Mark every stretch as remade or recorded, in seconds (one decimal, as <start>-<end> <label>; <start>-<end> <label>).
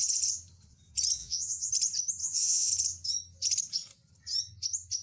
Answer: 0.0-1.2 recorded; 1.2-1.7 remade; 1.7-2.2 recorded; 2.2-2.7 remade; 2.7-5.0 recorded